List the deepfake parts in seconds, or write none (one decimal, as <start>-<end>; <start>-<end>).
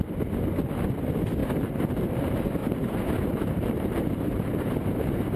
2.6-5.4